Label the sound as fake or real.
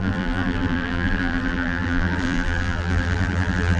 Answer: fake